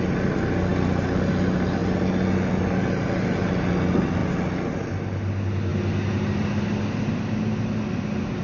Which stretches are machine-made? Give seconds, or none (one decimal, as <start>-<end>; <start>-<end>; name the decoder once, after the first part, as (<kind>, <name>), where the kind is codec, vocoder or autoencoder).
none